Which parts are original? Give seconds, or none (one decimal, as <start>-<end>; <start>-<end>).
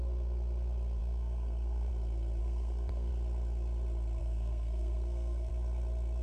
0.0-1.0; 1.9-2.4; 3.1-4.2; 5.5-6.2